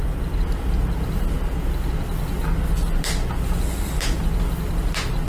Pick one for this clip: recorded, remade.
recorded